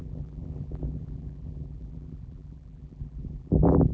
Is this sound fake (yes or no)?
yes